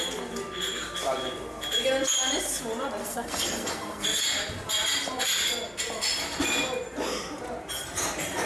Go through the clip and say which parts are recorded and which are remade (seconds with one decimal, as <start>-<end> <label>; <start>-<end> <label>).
0.0-3.0 recorded; 3.0-4.2 remade; 4.2-8.5 recorded